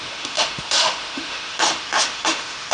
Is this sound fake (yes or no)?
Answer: yes